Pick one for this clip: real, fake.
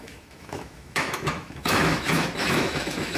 fake